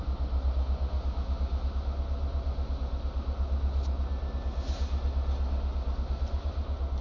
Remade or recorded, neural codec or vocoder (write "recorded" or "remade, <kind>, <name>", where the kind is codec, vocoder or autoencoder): recorded